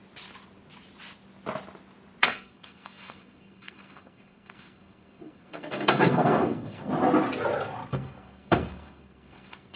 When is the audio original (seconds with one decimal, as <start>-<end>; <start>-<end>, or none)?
0.0-2.2; 6.9-7.9